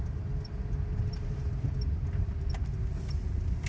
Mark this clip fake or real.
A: real